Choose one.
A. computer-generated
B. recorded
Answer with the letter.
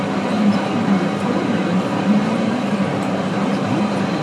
A